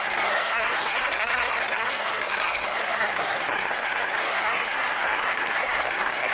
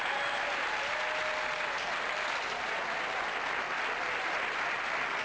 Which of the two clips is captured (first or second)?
second